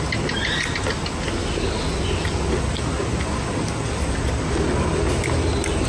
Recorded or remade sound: recorded